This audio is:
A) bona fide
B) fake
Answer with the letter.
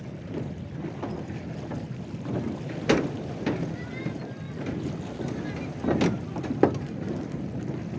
A